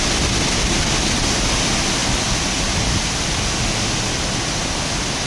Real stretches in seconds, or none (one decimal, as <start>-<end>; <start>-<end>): 0.0-5.3